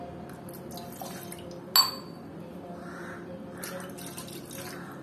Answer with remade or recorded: recorded